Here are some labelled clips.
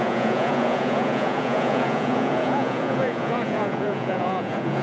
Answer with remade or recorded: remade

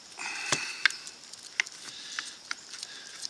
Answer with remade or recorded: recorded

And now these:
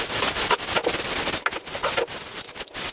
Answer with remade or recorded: recorded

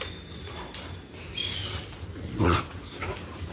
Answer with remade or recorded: recorded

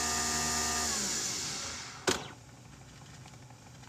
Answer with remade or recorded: recorded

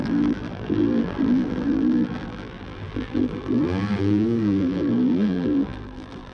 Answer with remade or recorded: remade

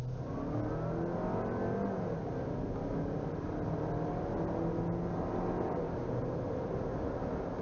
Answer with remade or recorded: recorded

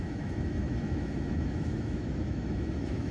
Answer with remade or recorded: remade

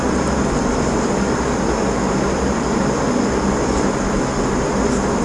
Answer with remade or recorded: recorded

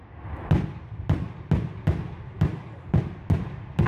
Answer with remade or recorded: recorded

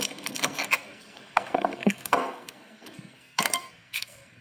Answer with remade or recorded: remade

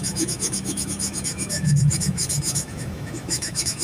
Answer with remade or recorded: remade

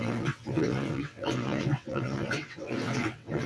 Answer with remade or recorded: remade